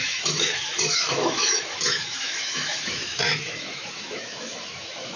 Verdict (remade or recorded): remade